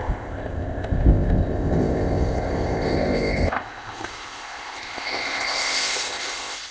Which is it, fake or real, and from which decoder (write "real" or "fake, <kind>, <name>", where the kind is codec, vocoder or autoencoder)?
fake, codec, ZipCodec